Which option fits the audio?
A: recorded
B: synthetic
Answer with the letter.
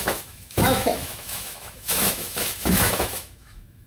B